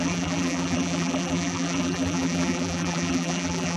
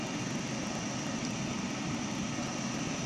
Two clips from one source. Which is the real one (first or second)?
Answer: second